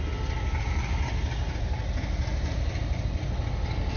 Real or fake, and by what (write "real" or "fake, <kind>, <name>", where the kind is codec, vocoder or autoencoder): real